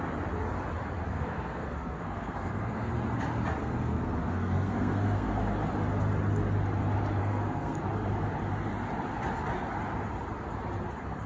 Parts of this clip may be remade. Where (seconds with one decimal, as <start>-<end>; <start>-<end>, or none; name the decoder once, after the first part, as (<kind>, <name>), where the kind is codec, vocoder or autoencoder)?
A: 1.1-2.9 (codec, SNAC); 3.6-5.3; 7.2-7.8